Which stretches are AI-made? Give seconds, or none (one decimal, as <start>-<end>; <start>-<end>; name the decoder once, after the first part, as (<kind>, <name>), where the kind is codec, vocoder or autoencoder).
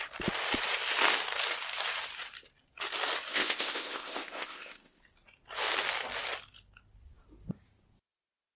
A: 3.3-5.0 (codec, ZipCodec)